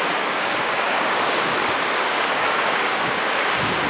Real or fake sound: fake